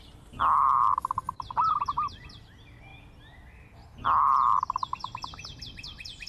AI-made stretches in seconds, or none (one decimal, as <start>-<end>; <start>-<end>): none